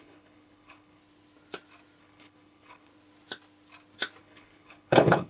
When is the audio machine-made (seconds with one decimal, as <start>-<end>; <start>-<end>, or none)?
0.0-1.0; 2.0-2.9; 4.2-5.3